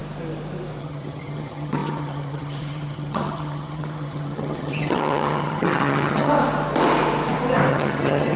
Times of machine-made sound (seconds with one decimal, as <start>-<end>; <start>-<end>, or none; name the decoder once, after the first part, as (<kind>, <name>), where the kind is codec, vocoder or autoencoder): 0.8-6.3 (vocoder, HiFi-GAN); 7.7-8.4

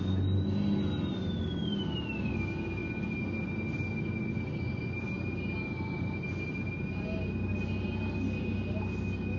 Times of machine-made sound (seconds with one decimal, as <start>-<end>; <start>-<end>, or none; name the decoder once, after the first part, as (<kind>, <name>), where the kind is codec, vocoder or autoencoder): none

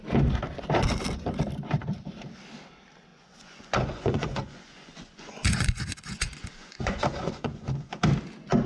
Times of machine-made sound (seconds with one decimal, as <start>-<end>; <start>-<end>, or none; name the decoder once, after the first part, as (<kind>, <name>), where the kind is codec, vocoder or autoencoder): 3.1-8.0 (vocoder, Vocos)